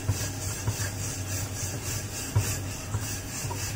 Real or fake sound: real